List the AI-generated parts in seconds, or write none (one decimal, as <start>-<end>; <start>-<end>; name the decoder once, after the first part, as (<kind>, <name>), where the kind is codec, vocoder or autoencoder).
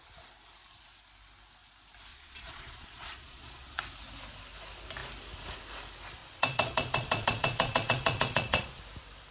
2.1-3.8 (vocoder, Vocos); 6.2-8.8